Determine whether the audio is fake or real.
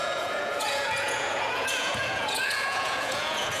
fake